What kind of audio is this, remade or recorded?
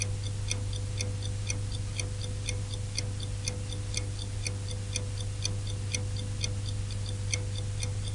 recorded